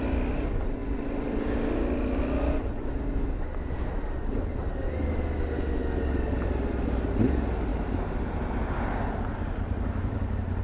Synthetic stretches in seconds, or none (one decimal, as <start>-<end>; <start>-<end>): 0.8-2.2; 9.3-10.6